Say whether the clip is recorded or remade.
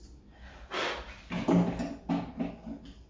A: recorded